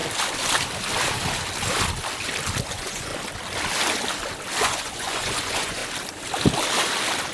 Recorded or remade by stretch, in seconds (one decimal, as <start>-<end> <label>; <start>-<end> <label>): 0.0-2.7 recorded; 2.7-3.1 remade; 3.1-4.6 recorded; 4.6-5.8 remade; 5.8-7.3 recorded